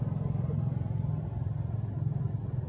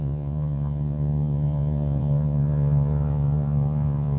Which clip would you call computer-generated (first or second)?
second